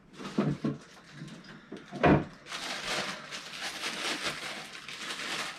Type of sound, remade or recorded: recorded